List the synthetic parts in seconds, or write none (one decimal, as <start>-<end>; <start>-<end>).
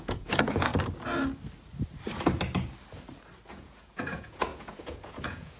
0.0-0.7; 3.5-5.6